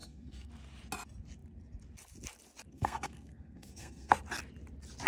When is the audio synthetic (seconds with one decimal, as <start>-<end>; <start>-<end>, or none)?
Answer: 0.0-0.5; 2.7-4.1

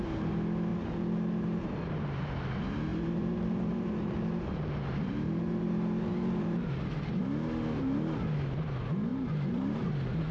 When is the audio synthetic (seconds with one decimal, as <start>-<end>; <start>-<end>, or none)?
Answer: 0.7-1.6; 2.9-7.2; 9.1-9.8

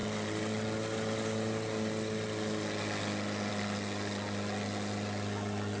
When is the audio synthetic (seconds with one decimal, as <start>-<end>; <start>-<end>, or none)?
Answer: none

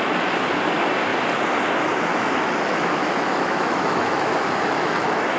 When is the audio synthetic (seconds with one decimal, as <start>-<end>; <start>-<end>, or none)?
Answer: 2.1-5.4

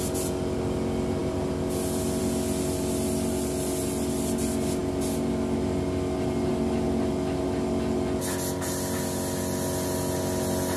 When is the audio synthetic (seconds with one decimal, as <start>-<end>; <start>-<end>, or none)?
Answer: none

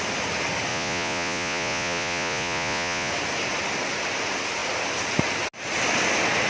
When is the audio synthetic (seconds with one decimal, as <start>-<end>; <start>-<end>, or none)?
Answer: 0.7-3.1

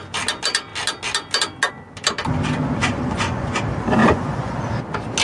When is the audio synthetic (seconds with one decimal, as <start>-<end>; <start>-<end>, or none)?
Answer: 2.8-3.6; 4.0-4.6

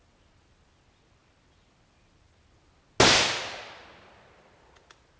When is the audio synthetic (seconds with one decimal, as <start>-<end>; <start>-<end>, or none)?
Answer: none